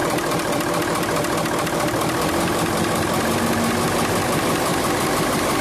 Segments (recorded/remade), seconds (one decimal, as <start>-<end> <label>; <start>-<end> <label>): 0.0-3.4 remade; 3.4-4.7 recorded; 4.7-5.6 remade